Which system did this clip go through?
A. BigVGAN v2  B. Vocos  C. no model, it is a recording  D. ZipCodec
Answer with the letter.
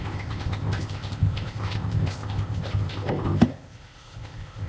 D